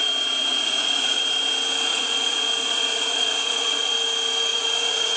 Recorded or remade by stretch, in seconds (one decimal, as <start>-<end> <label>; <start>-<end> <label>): 0.0-0.5 recorded; 0.5-1.2 remade; 1.2-1.9 recorded; 1.9-3.9 remade; 3.9-4.5 recorded; 4.5-5.2 remade